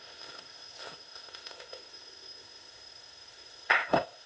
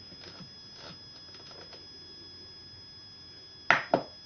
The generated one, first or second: first